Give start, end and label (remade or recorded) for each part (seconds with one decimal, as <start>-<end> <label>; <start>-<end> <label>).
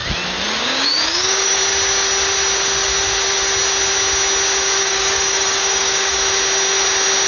0.0-0.6 recorded; 0.6-1.6 remade; 1.6-4.8 recorded; 4.8-6.2 remade; 6.2-7.3 recorded